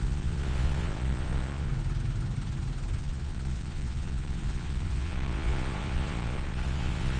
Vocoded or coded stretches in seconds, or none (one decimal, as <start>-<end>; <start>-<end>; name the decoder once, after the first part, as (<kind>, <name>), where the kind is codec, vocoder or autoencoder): 0.0-1.7 (vocoder, Vocos); 3.0-7.2